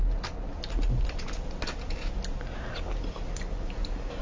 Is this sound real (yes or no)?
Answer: yes